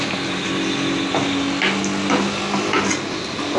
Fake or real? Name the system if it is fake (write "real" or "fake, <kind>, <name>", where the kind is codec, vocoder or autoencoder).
real